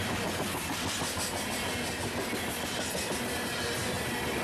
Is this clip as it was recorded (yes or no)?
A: yes